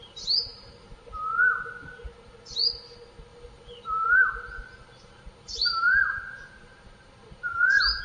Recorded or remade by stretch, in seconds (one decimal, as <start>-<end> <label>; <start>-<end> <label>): 0.0-0.9 remade; 0.9-3.3 recorded; 3.3-8.0 remade